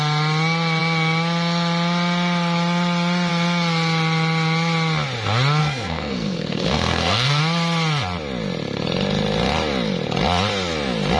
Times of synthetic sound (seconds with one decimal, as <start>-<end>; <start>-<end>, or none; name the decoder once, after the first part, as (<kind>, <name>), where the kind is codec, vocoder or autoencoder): 5.6-7.4 (codec, SNAC)